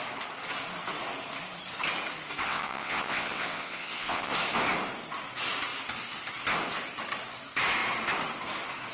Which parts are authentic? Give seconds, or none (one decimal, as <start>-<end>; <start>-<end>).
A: 0.0-2.4; 4.3-8.9